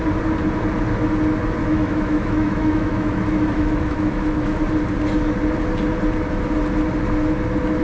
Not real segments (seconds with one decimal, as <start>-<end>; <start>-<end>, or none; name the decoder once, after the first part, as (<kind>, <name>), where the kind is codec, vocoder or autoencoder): 1.6-4.6 (autoencoder, DAC-VAE)